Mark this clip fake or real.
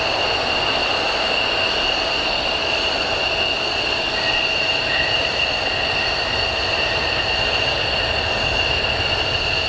real